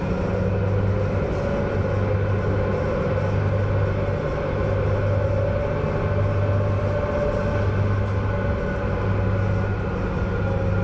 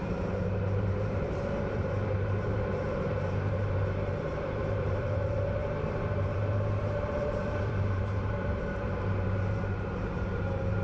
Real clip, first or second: first